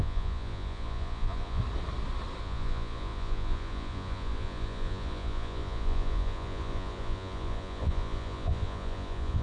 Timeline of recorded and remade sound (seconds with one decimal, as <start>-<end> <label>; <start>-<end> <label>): 0.0-1.6 remade; 1.6-2.4 recorded; 2.4-9.4 remade